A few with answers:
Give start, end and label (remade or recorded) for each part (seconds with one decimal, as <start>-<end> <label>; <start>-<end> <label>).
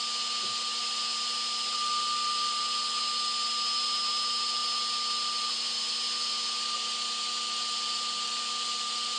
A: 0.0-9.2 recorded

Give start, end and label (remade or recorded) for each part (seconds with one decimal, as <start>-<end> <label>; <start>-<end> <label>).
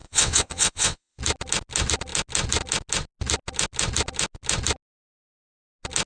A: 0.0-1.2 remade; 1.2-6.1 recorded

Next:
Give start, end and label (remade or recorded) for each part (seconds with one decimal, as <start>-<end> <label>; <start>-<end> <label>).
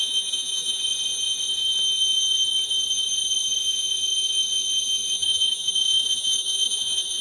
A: 0.0-0.8 remade; 0.8-5.1 recorded; 5.1-7.2 remade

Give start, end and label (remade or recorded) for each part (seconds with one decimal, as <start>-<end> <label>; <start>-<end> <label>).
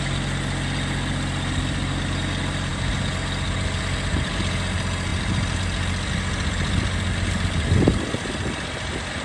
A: 0.0-9.2 recorded